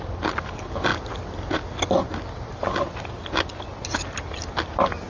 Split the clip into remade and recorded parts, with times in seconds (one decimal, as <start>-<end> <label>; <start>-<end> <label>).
0.0-5.1 recorded